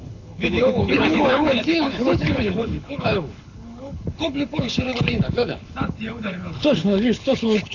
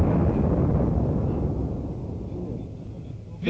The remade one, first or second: first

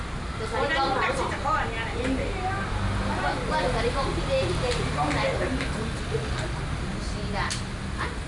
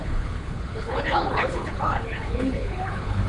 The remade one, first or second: second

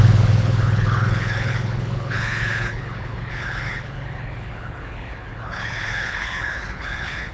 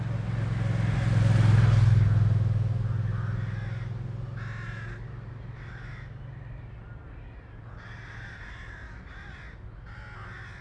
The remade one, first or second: first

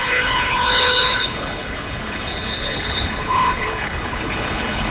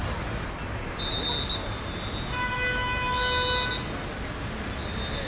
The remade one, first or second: first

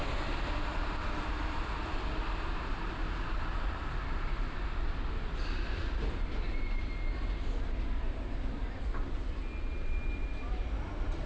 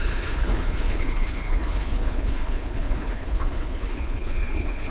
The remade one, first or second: second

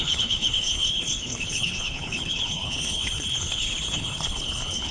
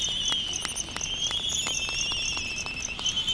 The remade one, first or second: first